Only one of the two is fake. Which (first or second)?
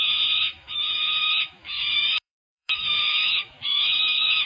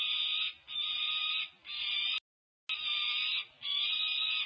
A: first